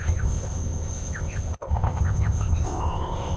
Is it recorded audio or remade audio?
remade